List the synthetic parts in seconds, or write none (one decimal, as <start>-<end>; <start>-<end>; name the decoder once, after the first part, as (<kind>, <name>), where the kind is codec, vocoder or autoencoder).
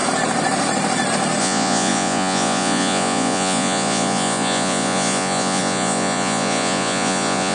1.4-7.5 (vocoder, Vocos)